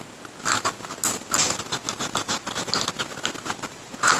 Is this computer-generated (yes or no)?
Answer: no